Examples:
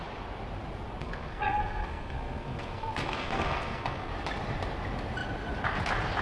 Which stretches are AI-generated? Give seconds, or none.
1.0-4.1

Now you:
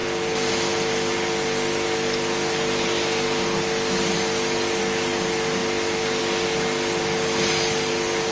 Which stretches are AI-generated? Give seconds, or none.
none

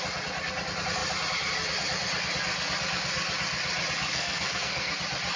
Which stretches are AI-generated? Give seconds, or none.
4.1-4.9

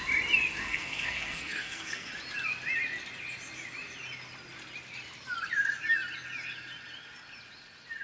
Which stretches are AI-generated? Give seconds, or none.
0.6-2.1

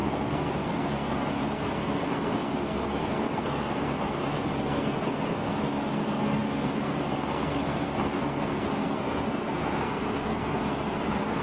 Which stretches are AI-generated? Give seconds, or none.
0.0-11.4

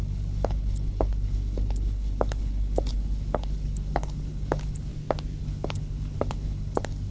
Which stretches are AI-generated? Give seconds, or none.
0.0-4.9; 5.4-7.1

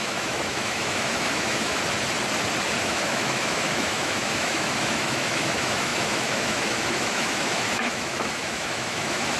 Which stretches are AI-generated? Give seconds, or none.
0.0-1.8; 2.8-9.4